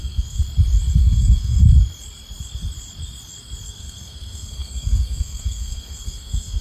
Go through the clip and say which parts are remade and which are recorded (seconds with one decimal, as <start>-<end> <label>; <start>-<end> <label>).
0.0-0.4 remade; 0.4-1.0 recorded; 1.0-1.6 remade; 1.6-3.7 recorded; 3.7-6.6 remade